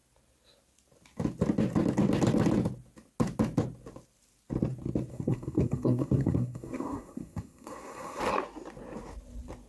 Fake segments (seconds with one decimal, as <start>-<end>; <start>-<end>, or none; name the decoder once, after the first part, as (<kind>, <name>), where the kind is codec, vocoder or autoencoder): 5.1-8.2 (codec, SNAC)